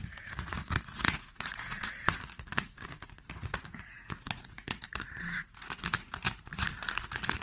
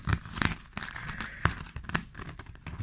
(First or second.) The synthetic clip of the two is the first